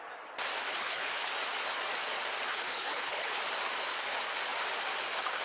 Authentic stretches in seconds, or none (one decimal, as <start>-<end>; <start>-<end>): 0.0-0.7; 1.3-2.5; 3.4-5.4